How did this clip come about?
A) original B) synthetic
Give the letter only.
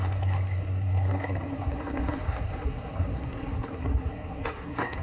B